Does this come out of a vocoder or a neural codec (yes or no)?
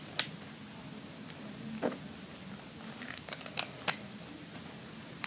no